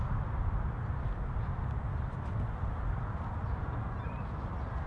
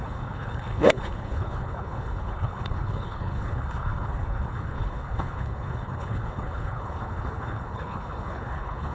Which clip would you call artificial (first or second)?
second